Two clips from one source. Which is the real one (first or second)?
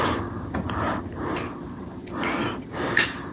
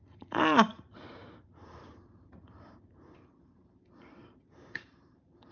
first